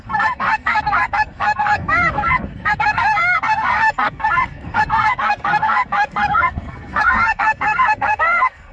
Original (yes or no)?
no